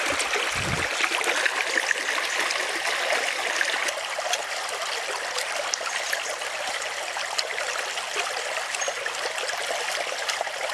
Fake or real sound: real